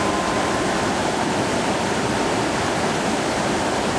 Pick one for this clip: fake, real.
real